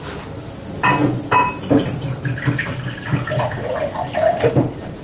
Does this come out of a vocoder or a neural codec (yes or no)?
no